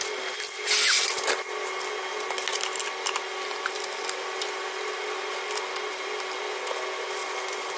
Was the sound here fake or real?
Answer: real